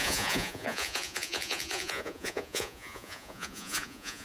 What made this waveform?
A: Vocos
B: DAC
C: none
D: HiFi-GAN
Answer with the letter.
A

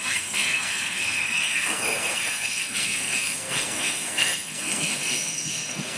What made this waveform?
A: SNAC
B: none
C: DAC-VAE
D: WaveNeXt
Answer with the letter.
A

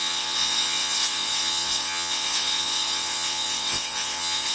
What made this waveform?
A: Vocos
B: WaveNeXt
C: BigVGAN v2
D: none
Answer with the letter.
B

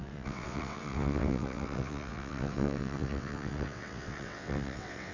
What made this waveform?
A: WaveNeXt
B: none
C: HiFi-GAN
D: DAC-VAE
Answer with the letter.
A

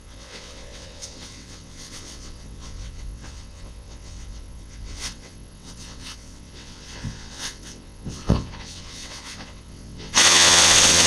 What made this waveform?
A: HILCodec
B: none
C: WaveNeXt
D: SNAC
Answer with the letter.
C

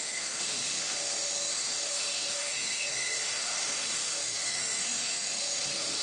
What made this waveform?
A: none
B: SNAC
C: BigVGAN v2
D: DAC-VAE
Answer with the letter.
D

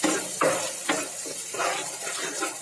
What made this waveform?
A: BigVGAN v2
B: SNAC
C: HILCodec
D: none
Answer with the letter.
D